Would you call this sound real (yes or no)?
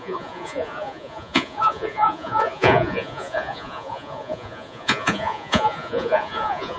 no